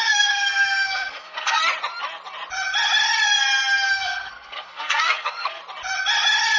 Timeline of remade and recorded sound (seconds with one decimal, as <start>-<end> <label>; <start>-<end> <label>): 0.0-1.6 remade; 1.6-3.9 recorded; 3.9-5.6 remade; 5.6-6.6 recorded